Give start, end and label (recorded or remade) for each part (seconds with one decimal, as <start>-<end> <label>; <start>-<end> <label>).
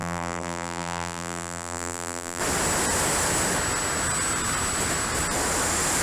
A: 0.0-2.4 remade; 2.4-6.0 recorded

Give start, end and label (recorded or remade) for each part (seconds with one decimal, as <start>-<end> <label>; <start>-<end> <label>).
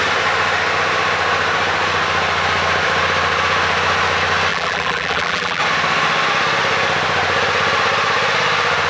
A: 0.0-4.5 recorded; 4.5-5.6 remade; 5.6-8.9 recorded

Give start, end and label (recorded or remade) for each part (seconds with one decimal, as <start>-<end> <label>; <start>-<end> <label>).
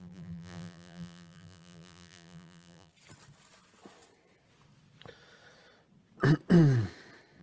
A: 0.0-2.9 remade; 2.9-7.4 recorded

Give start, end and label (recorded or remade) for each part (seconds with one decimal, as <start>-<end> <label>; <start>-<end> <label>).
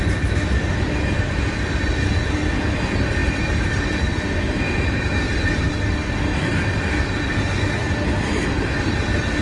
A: 0.0-3.2 recorded; 3.2-5.2 remade; 5.2-9.4 recorded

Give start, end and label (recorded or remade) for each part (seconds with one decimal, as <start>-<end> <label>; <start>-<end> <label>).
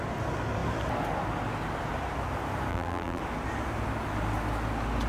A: 0.0-2.7 recorded; 2.7-3.2 remade; 3.2-5.1 recorded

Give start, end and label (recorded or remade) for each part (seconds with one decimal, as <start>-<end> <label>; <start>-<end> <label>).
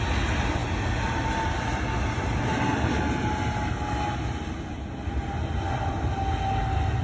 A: 0.0-7.0 recorded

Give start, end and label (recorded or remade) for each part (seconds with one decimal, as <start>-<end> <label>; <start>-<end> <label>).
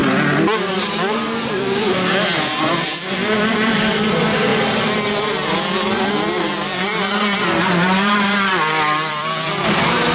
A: 0.0-0.7 recorded; 0.7-4.5 remade; 4.5-7.6 recorded; 7.6-10.1 remade